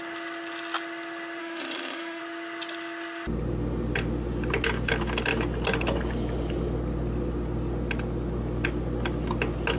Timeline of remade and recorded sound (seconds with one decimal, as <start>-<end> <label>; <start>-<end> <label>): 0.0-1.4 recorded; 1.4-2.2 remade; 2.2-9.8 recorded